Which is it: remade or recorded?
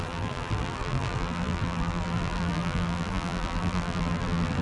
remade